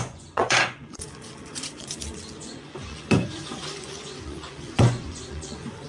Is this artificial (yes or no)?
yes